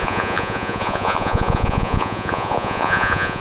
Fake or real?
fake